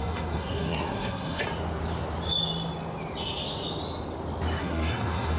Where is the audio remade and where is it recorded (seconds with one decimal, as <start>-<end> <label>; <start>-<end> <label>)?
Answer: 0.0-1.4 remade; 1.4-4.6 recorded; 4.6-5.4 remade